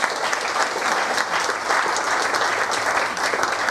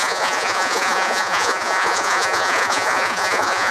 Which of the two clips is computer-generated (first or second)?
second